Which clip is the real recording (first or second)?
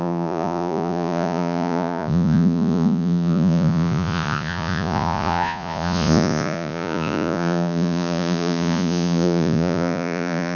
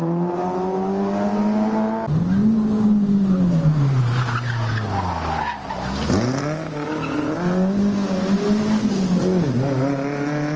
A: second